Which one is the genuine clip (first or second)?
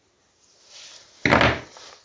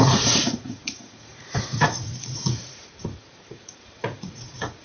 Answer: first